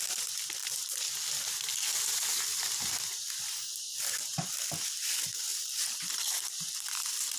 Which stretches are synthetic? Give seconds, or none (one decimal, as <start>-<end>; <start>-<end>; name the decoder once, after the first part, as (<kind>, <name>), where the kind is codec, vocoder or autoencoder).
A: 5.5-6.0 (vocoder, BigVGAN v2)